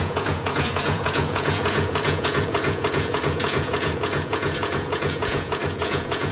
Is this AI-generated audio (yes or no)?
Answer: yes